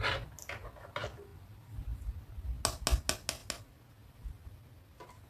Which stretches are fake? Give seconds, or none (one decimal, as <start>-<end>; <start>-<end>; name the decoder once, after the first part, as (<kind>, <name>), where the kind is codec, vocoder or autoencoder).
none